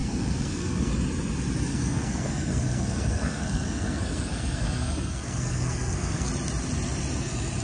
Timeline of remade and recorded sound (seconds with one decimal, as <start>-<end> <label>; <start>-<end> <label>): 0.0-0.9 remade; 0.9-1.7 recorded; 1.7-6.3 remade; 6.3-7.6 recorded